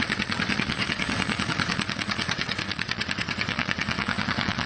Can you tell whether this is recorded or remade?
remade